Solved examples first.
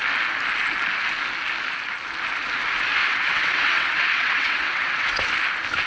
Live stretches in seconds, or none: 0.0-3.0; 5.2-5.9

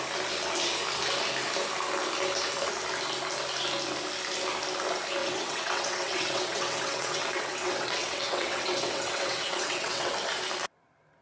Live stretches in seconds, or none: 0.0-5.2; 10.1-11.2

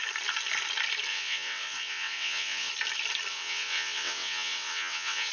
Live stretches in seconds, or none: 0.0-1.1; 2.7-3.3

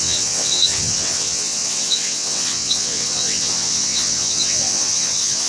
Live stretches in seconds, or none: none

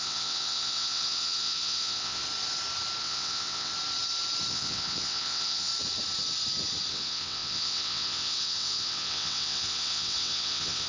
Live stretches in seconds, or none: 2.2-3.0; 3.7-4.5; 5.7-6.9